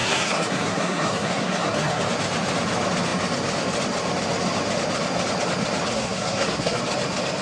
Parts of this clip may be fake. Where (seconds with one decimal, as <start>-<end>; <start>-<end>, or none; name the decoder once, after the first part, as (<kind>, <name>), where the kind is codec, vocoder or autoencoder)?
0.0-2.0 (codec, SNAC); 5.9-6.8